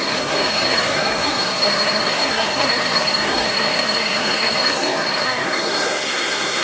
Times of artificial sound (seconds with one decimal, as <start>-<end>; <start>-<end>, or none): 0.0-6.6